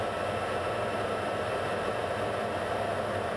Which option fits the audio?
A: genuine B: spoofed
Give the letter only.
A